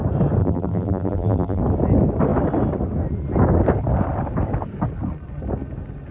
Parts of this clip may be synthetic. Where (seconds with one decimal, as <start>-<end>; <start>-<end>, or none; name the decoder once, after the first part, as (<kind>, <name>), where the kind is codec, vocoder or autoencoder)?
0.4-1.6 (vocoder, BigVGAN v2)